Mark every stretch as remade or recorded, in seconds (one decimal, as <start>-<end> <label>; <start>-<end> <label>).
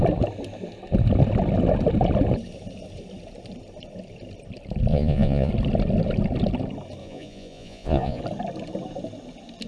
0.0-4.9 recorded; 4.9-5.5 remade; 5.5-7.0 recorded; 7.0-8.2 remade; 8.2-9.7 recorded